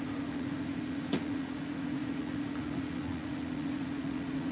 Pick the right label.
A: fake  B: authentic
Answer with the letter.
A